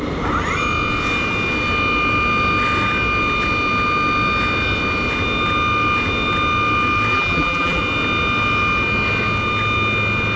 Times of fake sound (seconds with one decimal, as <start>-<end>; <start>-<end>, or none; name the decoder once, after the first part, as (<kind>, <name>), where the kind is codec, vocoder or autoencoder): 7.1-7.8 (vocoder, BigVGAN v2)